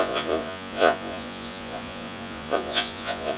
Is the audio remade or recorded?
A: remade